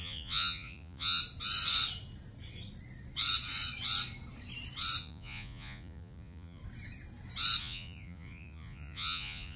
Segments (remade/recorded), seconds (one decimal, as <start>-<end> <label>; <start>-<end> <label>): 0.0-1.2 remade; 1.2-5.0 recorded; 5.0-6.6 remade; 6.6-7.6 recorded; 7.6-9.6 remade